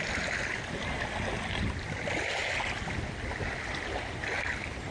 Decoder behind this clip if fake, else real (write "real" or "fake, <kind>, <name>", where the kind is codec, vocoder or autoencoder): real